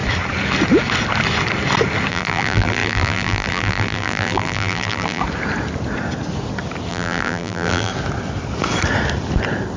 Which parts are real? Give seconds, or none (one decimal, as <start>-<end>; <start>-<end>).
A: 0.0-2.1; 5.2-6.9; 7.9-9.8